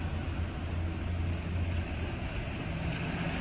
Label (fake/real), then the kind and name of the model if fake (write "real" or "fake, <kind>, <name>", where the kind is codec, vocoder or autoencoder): real